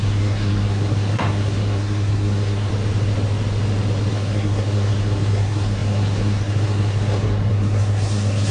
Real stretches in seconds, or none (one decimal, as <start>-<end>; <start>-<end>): 2.7-4.1